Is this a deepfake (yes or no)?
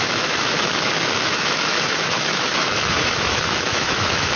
yes